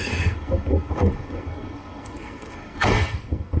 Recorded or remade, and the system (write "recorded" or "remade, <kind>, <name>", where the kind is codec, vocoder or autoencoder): remade, codec, SNAC